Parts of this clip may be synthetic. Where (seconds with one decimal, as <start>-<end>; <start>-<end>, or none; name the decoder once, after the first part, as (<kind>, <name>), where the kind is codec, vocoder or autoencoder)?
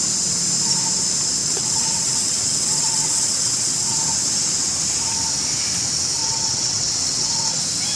1.4-4.0 (vocoder, WaveNeXt); 6.2-7.6